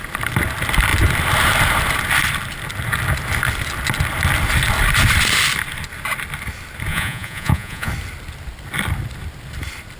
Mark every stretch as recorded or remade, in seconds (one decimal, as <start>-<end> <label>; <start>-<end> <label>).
0.0-6.9 recorded; 6.9-7.9 remade; 7.9-10.0 recorded